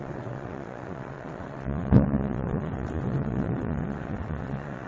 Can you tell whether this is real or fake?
fake